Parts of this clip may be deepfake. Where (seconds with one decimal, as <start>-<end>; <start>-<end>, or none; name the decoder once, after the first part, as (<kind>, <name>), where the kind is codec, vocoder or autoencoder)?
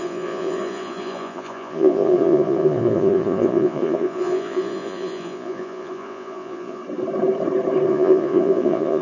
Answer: 0.0-6.8 (vocoder, Vocos); 7.9-9.0